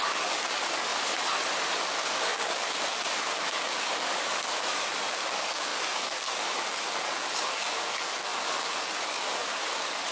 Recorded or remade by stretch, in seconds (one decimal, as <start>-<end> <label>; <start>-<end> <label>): 0.0-0.9 remade; 0.9-1.8 recorded; 1.8-10.1 remade